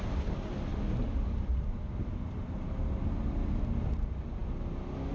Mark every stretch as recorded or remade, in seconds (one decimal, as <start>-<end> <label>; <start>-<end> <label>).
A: 0.0-5.1 recorded